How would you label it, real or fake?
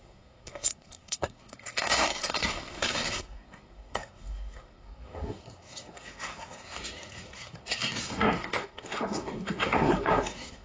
fake